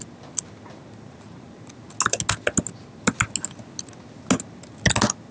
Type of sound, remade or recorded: recorded